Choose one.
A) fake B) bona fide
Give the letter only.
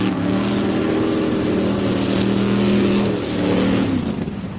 B